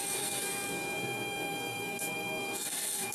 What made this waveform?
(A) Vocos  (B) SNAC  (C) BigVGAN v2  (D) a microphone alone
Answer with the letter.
B